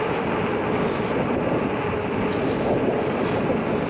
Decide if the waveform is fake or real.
real